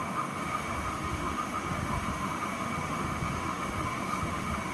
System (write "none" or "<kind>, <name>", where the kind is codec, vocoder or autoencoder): autoencoder, DAC-VAE